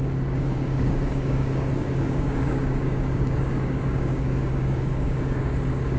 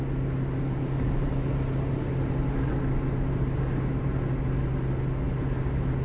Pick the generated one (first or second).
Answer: first